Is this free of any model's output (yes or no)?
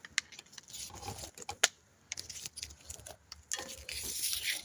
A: yes